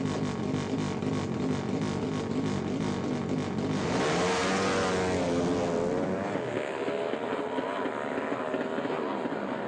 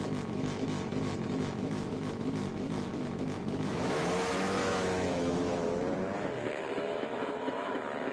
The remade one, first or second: second